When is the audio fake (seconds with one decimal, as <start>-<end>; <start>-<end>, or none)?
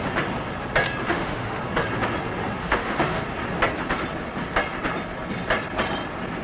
1.1-1.6; 2.6-3.2